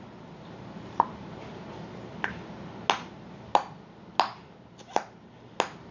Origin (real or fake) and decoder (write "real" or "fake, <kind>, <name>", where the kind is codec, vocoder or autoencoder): real